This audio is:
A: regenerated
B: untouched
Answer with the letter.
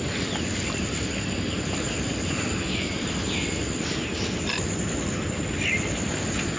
B